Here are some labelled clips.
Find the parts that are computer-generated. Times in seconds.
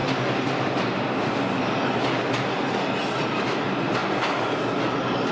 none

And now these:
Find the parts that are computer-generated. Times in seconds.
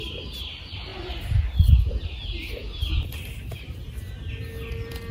none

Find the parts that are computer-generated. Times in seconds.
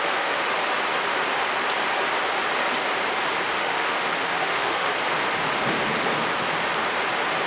0.0-0.6; 3.6-4.9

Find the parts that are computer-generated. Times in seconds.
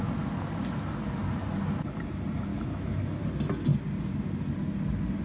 2.5-3.2